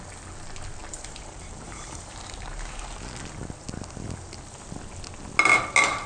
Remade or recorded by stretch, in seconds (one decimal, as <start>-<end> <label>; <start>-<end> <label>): 0.0-0.8 recorded; 0.8-2.8 remade; 2.8-6.1 recorded